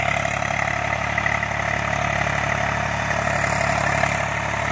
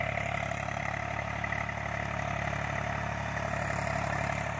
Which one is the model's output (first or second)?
second